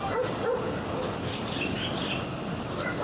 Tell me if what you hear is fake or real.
real